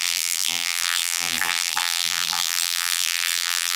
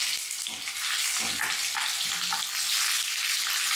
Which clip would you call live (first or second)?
second